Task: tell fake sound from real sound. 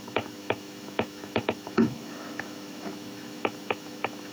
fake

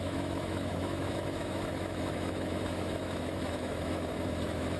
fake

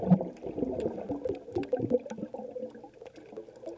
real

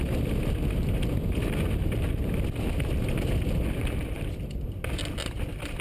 real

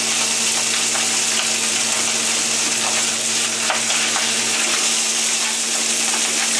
real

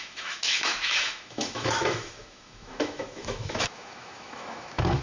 fake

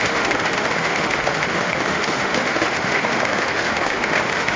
fake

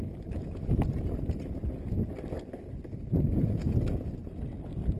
real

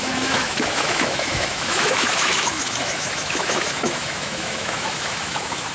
fake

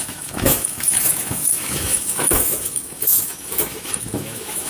fake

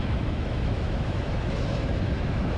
fake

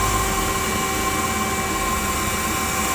real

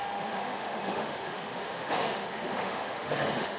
fake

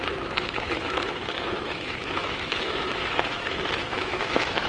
fake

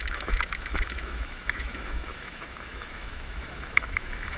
fake